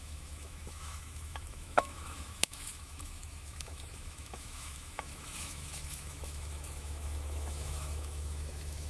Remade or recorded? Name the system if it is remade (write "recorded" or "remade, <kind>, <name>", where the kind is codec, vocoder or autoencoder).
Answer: remade, autoencoder, DAC-VAE